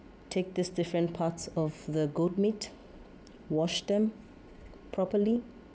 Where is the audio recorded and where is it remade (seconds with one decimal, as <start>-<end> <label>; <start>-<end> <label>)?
0.0-2.8 recorded; 2.8-5.1 remade; 5.1-5.7 recorded